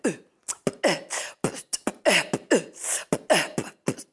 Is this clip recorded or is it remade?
recorded